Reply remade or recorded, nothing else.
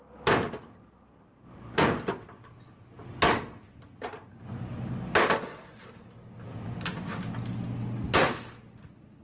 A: recorded